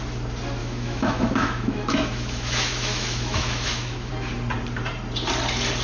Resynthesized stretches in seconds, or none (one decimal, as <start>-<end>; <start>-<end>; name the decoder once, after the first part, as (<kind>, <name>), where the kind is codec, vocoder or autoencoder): 0.6-4.1 (autoencoder, DAC-VAE)